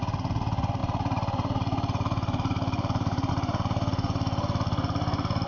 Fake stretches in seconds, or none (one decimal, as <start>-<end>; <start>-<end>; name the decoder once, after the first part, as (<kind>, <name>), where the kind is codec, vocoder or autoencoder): 0.8-3.3 (vocoder, BigVGAN v2)